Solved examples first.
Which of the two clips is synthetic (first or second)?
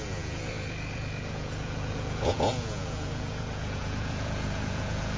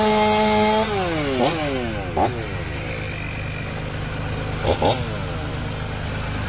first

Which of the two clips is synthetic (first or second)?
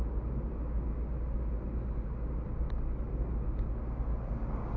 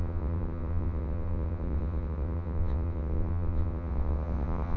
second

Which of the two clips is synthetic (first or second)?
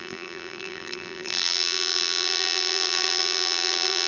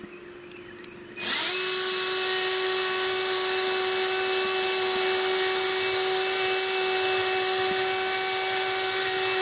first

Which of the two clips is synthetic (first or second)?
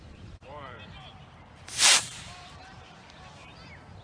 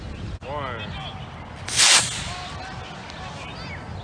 first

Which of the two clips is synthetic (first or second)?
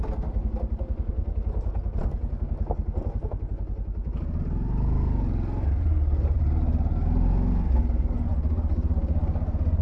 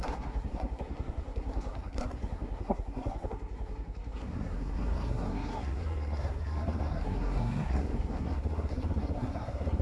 second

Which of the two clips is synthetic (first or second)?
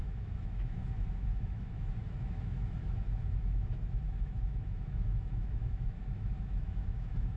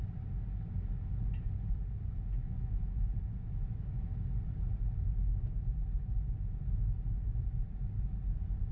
first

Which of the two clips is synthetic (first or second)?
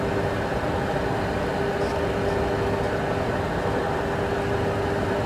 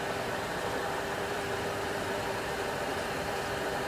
second